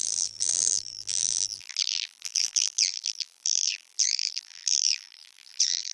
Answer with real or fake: fake